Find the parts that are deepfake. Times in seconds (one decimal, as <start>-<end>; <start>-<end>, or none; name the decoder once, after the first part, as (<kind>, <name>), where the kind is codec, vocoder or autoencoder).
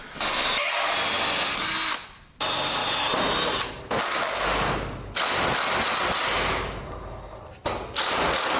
none